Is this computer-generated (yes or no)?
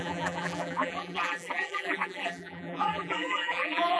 yes